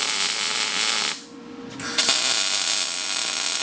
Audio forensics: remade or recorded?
recorded